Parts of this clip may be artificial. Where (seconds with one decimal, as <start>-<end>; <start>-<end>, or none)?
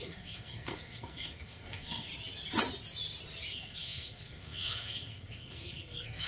0.0-2.1; 3.5-6.3